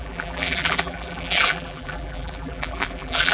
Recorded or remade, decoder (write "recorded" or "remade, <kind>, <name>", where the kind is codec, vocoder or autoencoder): remade, vocoder, BigVGAN v2